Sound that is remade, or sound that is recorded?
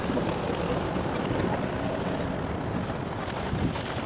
recorded